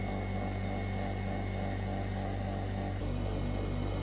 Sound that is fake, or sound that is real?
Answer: real